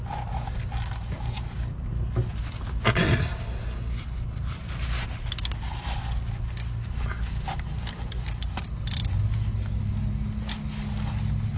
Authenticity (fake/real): real